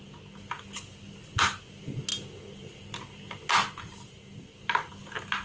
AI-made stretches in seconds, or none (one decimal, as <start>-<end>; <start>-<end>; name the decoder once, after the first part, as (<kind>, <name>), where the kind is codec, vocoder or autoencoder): none